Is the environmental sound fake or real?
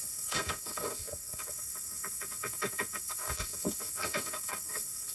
fake